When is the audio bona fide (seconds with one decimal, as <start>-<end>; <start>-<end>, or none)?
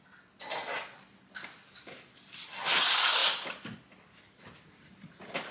0.0-5.5